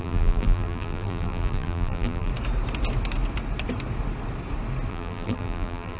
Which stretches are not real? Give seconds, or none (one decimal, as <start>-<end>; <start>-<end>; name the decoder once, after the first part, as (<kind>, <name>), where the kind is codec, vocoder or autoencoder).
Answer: 0.0-2.3 (vocoder, BigVGAN v2); 4.9-6.0